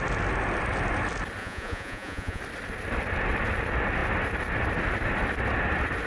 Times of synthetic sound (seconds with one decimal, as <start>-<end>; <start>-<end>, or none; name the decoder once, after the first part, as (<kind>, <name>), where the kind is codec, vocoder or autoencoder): 1.4-2.4 (vocoder, Vocos)